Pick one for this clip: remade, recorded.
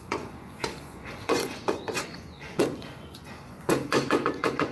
remade